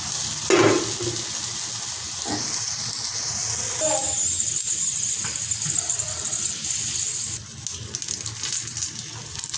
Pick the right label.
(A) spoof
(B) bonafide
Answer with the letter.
B